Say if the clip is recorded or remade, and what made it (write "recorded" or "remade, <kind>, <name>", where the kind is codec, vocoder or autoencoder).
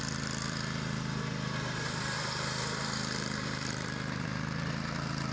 remade, vocoder, BigVGAN v2